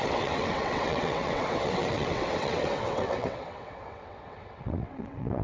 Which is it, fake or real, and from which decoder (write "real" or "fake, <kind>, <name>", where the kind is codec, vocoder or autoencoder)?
fake, vocoder, WaveNeXt